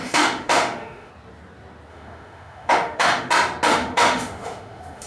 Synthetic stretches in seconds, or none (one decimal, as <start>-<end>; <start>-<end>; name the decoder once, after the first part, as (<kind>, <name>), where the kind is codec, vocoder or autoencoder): 0.0-1.1 (autoencoder, DAC-VAE); 1.9-3.3; 3.7-5.1